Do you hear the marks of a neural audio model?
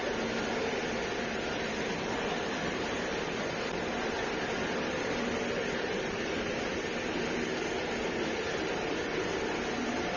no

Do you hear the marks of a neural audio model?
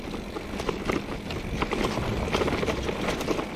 yes